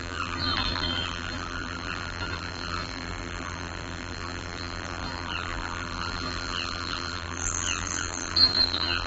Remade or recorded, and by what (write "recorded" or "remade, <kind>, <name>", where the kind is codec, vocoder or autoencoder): remade, vocoder, BigVGAN v2